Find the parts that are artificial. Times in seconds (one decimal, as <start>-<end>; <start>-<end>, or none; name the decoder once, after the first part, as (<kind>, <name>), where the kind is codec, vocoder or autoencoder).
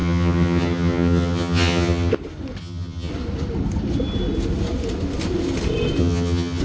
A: 0.0-2.1 (vocoder, HiFi-GAN); 2.6-3.1; 6.0-6.6